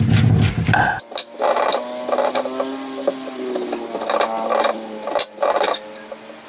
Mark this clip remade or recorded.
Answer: recorded